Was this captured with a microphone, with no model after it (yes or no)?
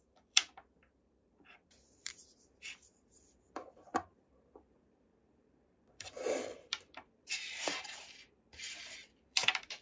no